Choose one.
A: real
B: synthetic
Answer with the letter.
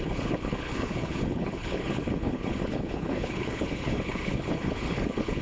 B